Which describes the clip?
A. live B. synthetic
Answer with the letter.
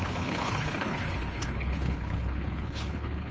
B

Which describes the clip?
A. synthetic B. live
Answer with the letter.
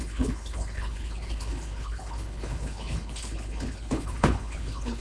A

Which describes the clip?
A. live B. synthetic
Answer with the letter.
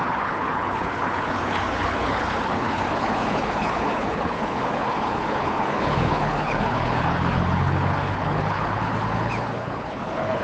B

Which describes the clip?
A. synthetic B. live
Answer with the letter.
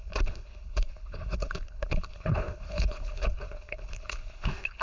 A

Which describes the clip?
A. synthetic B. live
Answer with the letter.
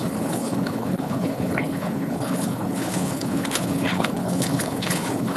A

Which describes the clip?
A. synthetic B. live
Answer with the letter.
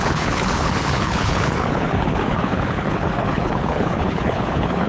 A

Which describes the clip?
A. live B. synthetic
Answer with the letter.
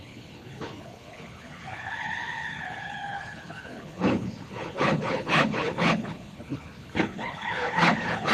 B